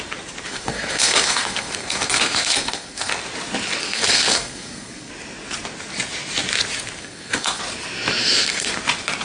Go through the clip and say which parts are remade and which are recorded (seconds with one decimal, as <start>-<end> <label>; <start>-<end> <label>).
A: 0.0-0.5 recorded; 0.5-3.1 remade; 3.1-3.8 recorded; 3.8-5.1 remade; 5.1-7.0 recorded; 7.0-7.6 remade; 7.6-8.2 recorded; 8.2-8.7 remade; 8.7-9.2 recorded